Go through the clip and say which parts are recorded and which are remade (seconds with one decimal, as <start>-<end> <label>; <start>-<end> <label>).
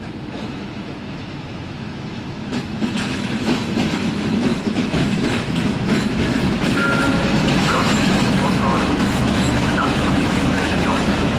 0.0-11.4 remade